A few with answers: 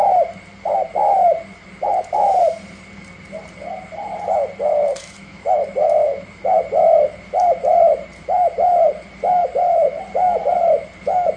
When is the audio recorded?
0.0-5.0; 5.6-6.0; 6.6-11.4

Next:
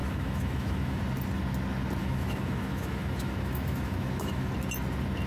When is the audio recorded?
1.0-2.0; 4.5-5.3

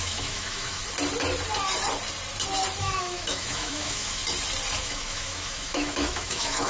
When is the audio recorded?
0.8-2.8; 4.2-4.8

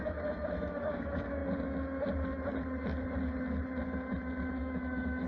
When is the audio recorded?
1.4-4.6

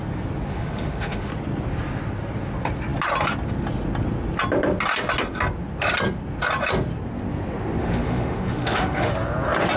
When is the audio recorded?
0.0-0.5; 1.3-7.8; 9.1-9.8

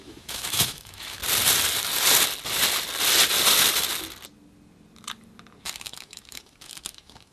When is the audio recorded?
1.2-5.6

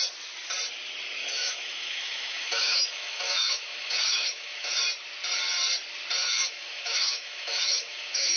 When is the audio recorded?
0.0-1.2; 4.8-6.2